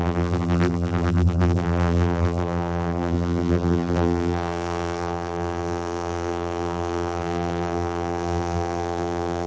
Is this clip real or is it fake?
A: fake